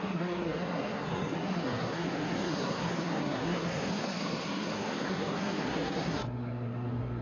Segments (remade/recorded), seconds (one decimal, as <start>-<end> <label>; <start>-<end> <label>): 0.0-7.2 remade